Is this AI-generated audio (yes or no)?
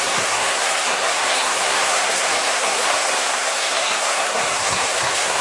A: yes